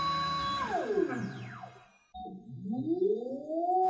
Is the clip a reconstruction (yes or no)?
no